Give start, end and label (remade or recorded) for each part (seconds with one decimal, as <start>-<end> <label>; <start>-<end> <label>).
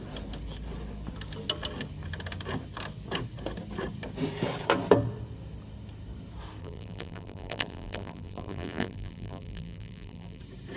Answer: 0.0-6.6 recorded; 6.6-10.4 remade; 10.4-10.8 recorded